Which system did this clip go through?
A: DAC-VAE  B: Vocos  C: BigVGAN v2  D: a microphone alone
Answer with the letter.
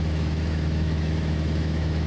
A